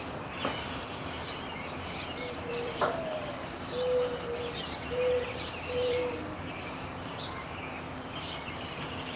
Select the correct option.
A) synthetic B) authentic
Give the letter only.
A